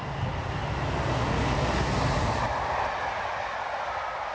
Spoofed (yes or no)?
no